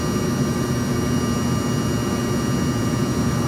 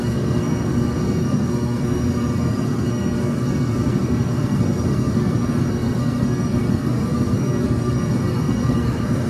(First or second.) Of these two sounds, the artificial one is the second